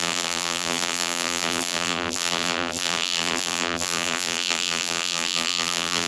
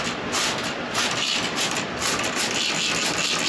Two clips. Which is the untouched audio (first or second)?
second